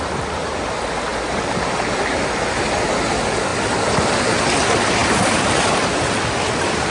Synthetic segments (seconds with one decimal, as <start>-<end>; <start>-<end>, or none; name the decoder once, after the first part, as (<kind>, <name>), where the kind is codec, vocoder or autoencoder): none